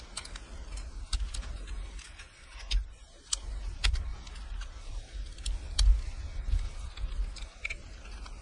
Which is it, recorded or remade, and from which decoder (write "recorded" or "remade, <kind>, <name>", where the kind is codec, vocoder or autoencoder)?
recorded